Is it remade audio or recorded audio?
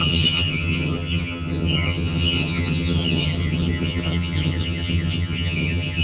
remade